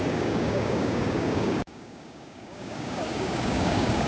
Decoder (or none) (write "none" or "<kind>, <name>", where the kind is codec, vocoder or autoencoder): codec, DAC